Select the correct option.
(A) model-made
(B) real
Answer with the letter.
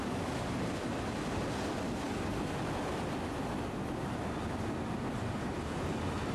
B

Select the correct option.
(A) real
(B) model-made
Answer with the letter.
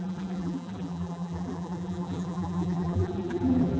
B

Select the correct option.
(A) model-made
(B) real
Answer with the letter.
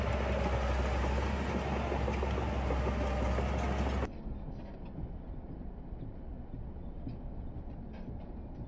B